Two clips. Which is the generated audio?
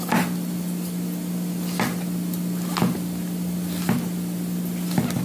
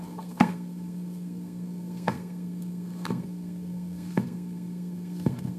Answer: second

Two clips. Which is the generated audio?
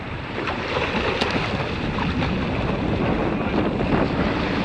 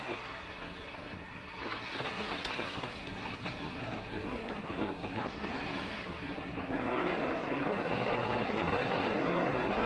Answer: second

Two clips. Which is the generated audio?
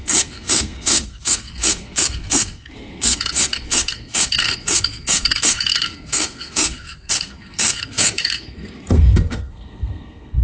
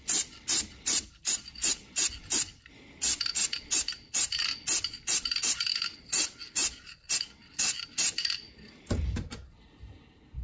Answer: first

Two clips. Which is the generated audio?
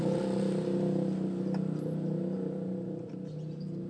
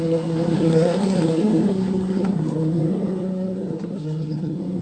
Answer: second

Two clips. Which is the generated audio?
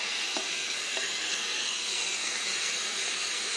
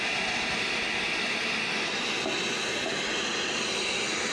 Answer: first